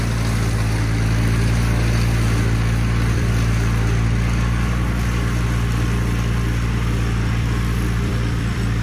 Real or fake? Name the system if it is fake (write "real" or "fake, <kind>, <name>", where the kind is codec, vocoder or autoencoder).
fake, vocoder, BigVGAN v2